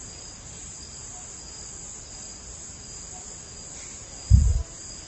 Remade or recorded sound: recorded